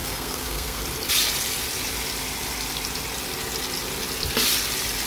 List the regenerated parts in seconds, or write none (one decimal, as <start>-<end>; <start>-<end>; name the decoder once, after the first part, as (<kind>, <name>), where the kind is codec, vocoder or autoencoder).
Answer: 0.0-0.8 (codec, SNAC)